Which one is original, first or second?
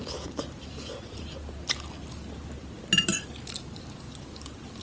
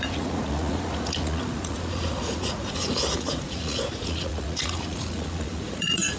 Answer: first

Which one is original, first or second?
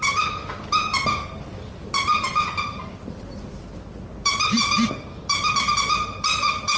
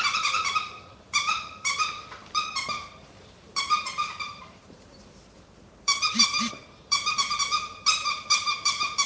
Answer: first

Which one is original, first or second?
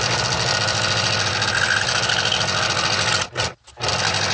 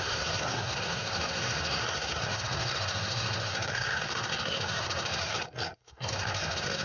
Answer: first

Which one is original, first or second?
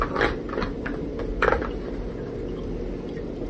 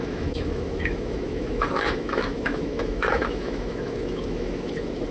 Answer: first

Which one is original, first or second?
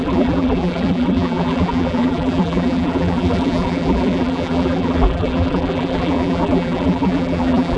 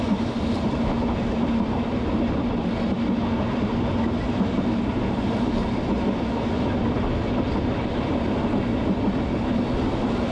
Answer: second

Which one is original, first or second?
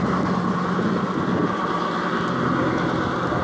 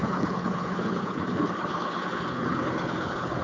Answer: first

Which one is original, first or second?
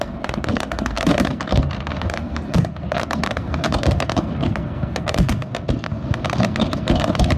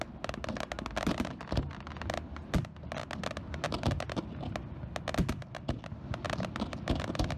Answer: second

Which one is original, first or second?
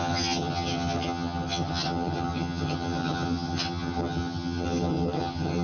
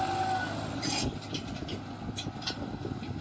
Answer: second